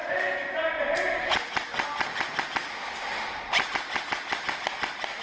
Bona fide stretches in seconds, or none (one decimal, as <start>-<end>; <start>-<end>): 0.0-0.6; 1.7-4.8